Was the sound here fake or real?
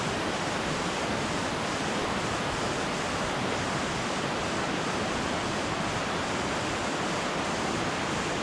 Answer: real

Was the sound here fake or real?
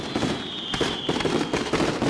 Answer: real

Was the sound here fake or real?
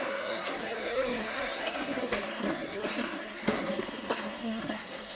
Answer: fake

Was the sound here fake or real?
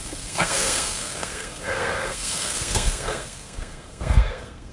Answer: fake